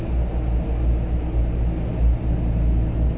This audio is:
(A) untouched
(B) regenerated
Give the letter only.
A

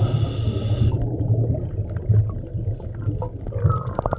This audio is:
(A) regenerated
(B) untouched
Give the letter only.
B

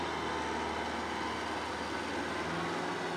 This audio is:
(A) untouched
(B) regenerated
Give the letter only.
A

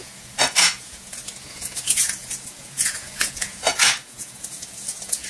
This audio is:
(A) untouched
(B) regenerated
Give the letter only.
B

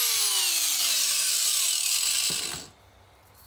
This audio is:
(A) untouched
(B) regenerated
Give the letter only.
A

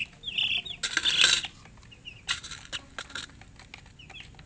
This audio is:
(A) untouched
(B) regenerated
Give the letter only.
A